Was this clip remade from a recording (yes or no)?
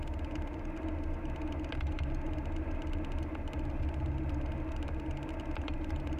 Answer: no